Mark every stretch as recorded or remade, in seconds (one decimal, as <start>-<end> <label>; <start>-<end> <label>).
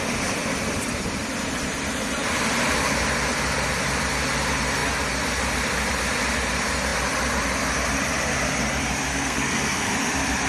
0.0-9.1 recorded; 9.1-9.9 remade; 9.9-10.5 recorded